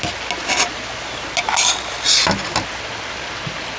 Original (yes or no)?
yes